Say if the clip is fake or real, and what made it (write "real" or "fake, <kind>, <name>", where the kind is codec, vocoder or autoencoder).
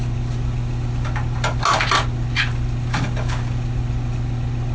real